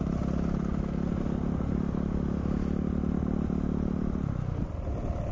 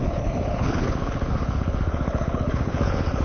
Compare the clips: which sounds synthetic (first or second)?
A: second